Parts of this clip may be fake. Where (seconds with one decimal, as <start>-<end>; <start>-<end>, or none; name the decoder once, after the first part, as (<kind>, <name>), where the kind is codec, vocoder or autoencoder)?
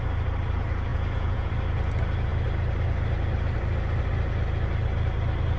0.9-1.5 (vocoder, Vocos)